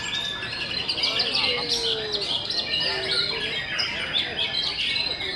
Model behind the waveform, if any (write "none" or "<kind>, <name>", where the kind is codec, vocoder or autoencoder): none